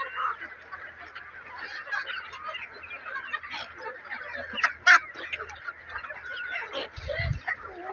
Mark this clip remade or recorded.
recorded